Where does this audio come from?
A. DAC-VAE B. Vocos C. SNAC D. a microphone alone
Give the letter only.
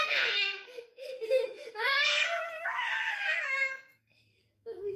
C